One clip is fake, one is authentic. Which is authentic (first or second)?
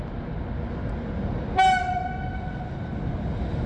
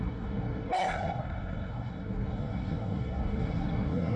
first